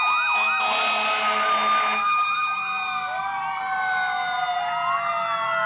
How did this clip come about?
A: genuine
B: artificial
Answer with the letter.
A